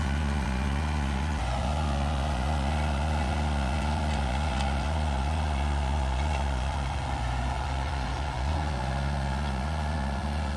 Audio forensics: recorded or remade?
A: remade